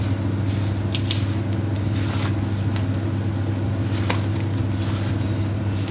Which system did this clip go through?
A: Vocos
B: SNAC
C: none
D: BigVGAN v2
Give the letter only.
C